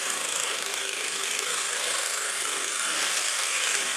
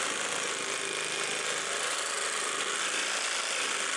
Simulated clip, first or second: first